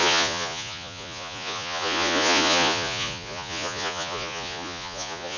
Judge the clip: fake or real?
fake